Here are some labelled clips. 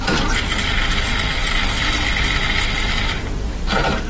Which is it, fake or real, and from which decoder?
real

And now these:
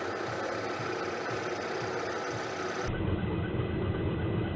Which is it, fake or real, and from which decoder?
real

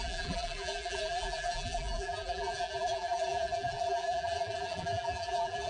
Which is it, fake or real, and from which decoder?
fake, vocoder, BigVGAN v2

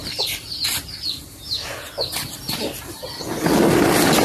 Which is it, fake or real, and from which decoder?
real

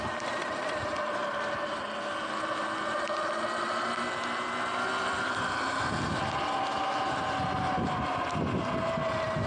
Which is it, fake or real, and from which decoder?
real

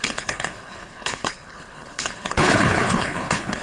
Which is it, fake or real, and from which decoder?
fake, codec, HILCodec